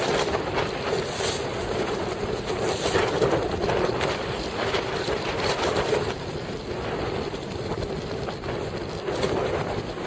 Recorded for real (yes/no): yes